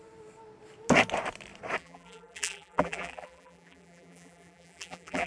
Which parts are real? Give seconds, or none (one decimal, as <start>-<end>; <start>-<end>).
0.0-1.8